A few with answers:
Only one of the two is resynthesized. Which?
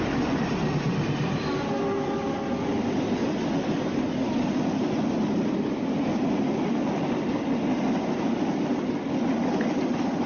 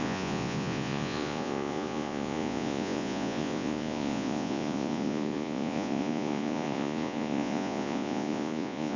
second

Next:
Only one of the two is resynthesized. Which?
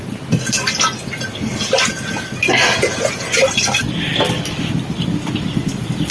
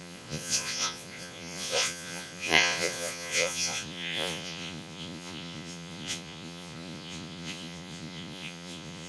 second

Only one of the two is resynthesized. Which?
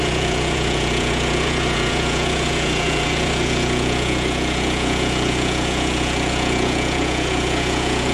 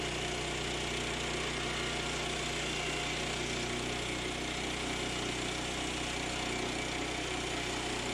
first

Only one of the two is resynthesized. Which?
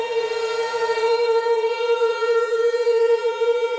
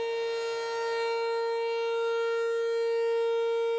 first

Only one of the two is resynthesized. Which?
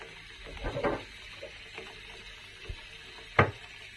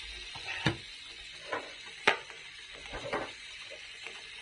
second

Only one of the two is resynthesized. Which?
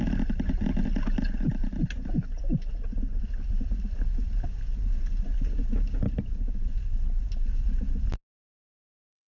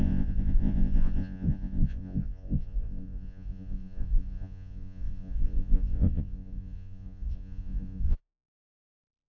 second